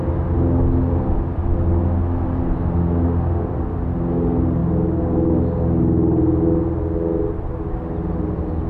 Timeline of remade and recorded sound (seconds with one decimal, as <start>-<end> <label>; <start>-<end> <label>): 0.0-8.7 recorded